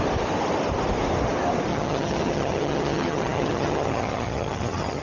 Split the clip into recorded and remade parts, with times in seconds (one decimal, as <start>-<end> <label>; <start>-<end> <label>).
0.0-1.7 recorded; 1.7-5.0 remade

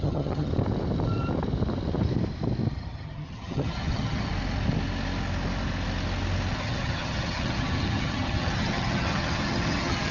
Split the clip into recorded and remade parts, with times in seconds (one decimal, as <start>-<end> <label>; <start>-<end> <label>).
0.0-0.5 remade; 0.5-2.7 recorded; 2.7-4.3 remade; 4.3-6.5 recorded; 6.5-10.1 remade

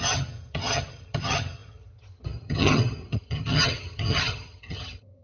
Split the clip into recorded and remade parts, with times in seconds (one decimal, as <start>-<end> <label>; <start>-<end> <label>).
0.0-5.2 remade

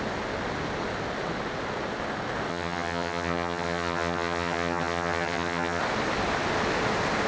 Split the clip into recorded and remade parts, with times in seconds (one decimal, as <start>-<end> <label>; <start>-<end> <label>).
0.0-2.5 recorded; 2.5-5.8 remade; 5.8-7.3 recorded

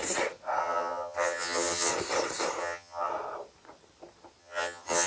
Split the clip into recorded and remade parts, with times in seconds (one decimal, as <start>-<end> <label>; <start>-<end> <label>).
0.0-0.6 recorded; 0.6-1.9 remade; 1.9-2.6 recorded; 2.6-3.1 remade; 3.1-4.4 recorded; 4.4-5.1 remade

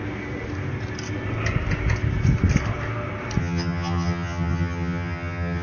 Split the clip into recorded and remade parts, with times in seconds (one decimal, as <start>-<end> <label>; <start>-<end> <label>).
0.0-3.4 recorded; 3.4-5.6 remade

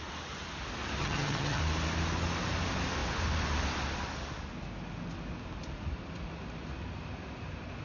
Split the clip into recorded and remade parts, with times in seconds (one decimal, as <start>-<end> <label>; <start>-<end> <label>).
0.0-1.0 recorded; 1.0-1.6 remade; 1.6-7.8 recorded

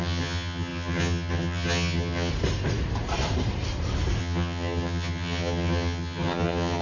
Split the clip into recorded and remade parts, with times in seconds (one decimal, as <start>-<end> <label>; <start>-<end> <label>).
0.0-2.3 remade; 2.3-4.2 recorded; 4.2-6.8 remade